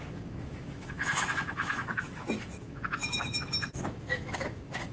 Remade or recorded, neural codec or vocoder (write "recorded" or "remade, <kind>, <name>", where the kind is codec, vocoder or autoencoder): remade, autoencoder, DAC-VAE